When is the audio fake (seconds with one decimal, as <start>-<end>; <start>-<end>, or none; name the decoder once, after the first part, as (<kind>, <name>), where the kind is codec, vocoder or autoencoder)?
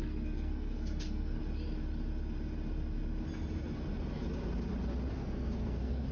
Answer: 0.0-1.4 (codec, SNAC); 5.1-6.1